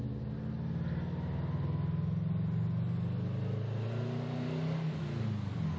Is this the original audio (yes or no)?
yes